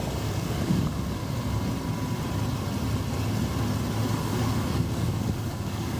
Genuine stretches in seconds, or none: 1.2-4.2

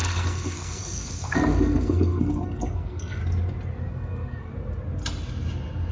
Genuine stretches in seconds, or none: 3.2-3.9; 4.5-5.9

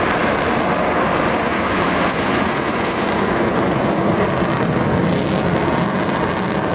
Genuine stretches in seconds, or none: 0.0-1.4; 4.1-6.7